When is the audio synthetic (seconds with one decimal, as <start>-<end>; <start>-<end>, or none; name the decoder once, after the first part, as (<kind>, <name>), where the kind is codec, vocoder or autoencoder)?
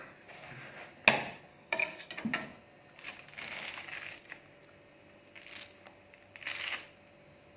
1.5-2.1 (codec, DAC)